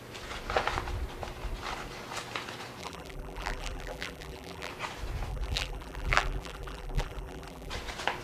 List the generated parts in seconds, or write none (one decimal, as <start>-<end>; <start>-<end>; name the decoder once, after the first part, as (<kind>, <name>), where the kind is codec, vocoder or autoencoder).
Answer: 2.8-4.7 (vocoder, BigVGAN v2); 5.3-7.7